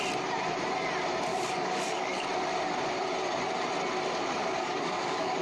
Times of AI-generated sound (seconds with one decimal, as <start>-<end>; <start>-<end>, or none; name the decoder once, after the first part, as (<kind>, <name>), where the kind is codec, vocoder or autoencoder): 1.3-2.2 (codec, DAC); 4.4-5.4